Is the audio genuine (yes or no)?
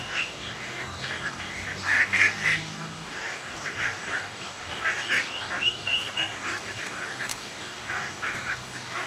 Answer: no